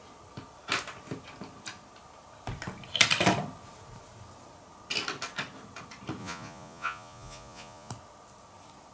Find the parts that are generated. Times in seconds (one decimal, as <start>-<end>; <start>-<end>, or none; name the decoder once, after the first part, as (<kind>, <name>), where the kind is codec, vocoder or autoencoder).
6.2-7.9 (vocoder, Vocos)